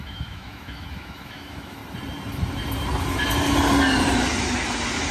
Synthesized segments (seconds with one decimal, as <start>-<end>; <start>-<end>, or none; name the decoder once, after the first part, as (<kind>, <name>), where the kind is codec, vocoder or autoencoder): 0.0-1.8 (autoencoder, DAC-VAE)